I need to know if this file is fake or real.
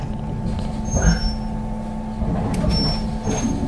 real